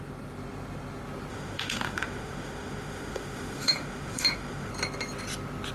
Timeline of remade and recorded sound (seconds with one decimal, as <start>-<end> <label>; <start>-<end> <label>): 0.0-1.3 recorded; 1.3-4.7 remade; 4.7-5.7 recorded